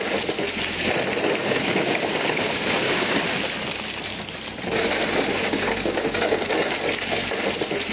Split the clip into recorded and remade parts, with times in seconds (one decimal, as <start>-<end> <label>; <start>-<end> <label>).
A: 0.0-1.4 recorded; 1.4-3.2 remade; 3.2-5.3 recorded; 5.3-6.5 remade; 6.5-7.9 recorded